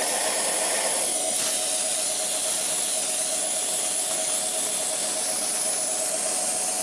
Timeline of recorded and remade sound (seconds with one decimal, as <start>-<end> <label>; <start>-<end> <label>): 0.0-6.8 recorded